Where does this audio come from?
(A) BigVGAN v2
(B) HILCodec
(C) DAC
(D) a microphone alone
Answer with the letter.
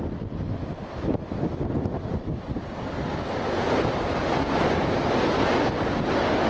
D